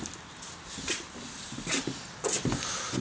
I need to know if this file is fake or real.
real